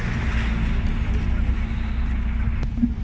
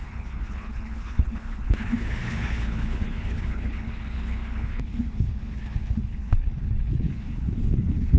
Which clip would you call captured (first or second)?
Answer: first